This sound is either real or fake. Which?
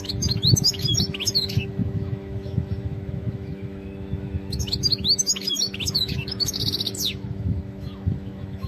fake